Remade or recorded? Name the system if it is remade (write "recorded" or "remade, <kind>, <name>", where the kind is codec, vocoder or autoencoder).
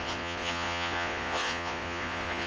remade, vocoder, Vocos